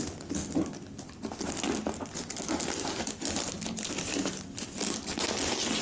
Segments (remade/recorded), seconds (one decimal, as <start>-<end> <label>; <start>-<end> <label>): 0.0-5.8 recorded